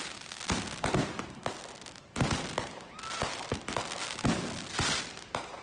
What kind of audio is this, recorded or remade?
recorded